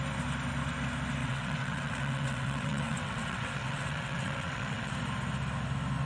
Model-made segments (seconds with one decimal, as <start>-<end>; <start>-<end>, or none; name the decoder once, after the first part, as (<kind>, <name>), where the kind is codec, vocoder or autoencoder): 1.2-4.9 (vocoder, WaveNeXt)